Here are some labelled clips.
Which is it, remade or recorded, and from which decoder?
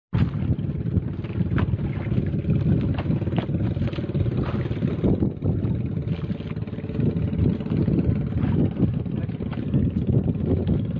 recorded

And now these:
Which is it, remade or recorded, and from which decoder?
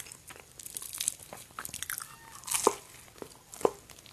recorded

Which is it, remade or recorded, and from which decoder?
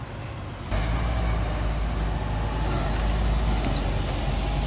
recorded